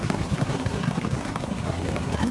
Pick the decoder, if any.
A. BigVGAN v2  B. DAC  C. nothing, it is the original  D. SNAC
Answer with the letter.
D